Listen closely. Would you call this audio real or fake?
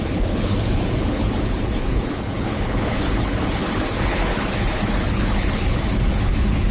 fake